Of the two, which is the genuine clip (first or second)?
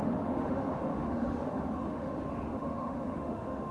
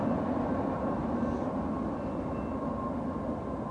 second